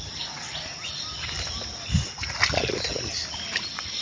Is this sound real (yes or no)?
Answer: no